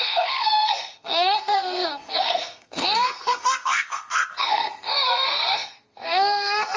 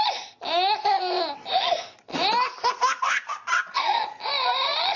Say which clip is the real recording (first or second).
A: second